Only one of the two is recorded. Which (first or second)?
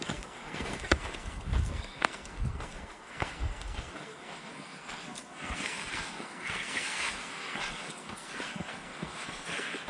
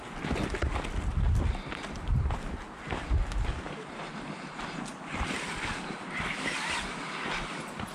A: second